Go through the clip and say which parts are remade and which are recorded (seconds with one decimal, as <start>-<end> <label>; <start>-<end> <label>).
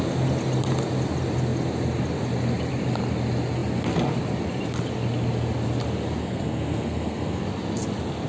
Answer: 0.0-6.2 recorded; 6.2-7.4 remade; 7.4-8.3 recorded